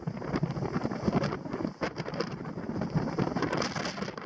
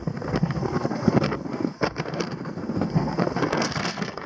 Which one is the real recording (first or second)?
first